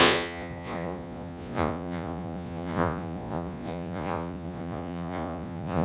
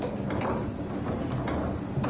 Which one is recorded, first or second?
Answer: second